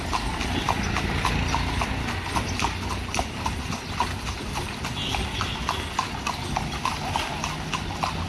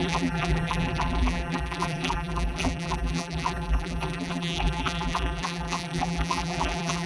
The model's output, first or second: second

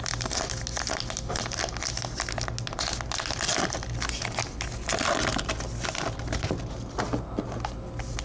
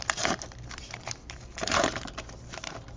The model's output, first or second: second